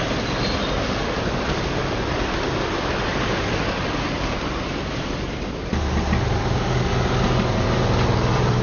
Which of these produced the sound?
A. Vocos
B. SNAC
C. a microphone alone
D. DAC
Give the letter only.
C